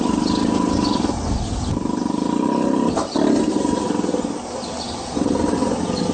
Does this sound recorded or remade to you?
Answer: recorded